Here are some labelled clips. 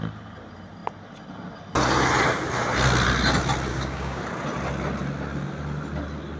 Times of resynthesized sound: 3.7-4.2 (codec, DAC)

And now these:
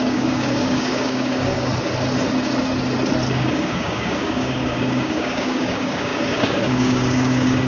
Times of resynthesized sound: 0.0-1.7 (codec, DAC); 3.3-7.7

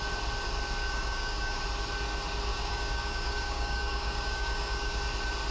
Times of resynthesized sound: 0.8-1.6 (codec, DAC); 2.5-5.0

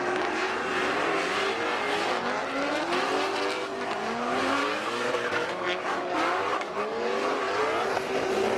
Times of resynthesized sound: 4.6-7.6 (codec, DAC)

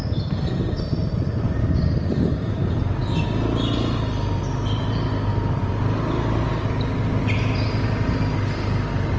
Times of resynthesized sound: 1.6-2.6 (codec, DAC)

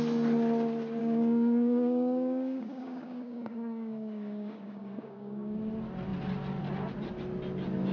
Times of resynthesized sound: 1.0-5.6 (codec, DAC)